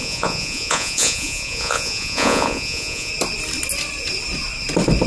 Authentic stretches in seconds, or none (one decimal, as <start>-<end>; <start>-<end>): 3.1-5.1